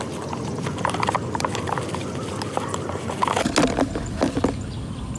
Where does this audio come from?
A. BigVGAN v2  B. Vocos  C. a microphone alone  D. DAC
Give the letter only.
C